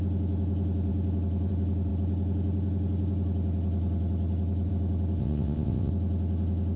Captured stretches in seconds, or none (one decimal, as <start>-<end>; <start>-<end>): 0.0-5.2; 5.9-6.8